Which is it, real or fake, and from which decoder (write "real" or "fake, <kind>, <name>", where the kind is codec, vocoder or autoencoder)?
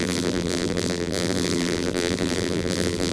fake, vocoder, BigVGAN v2